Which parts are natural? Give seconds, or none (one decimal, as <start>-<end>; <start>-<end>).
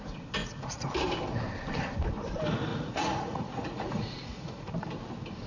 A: 0.0-0.4; 0.9-2.7; 4.7-5.5